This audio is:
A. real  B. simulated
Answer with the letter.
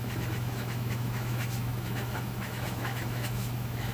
B